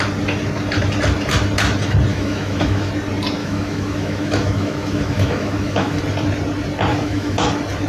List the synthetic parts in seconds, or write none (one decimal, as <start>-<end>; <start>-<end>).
2.1-2.9; 3.4-6.0; 6.9-7.5